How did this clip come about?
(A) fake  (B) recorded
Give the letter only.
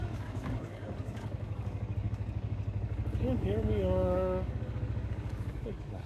A